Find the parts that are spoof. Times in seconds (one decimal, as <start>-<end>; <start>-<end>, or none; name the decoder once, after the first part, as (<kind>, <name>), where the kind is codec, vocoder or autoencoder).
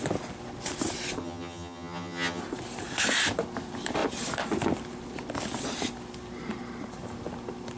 1.2-2.4 (vocoder, HiFi-GAN)